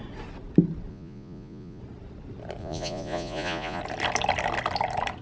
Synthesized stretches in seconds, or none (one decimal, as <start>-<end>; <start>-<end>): 0.9-1.8; 2.6-3.8